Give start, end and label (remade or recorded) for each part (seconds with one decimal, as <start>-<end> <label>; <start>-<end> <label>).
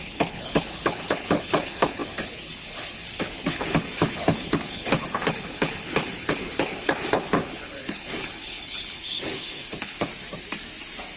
0.0-10.1 remade; 10.1-11.2 recorded